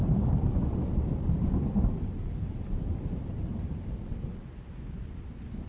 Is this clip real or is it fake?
real